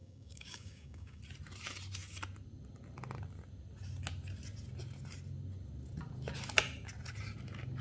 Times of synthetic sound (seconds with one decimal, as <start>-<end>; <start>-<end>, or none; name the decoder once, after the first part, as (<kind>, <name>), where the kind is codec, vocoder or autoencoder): 0.0-1.2 (codec, DAC)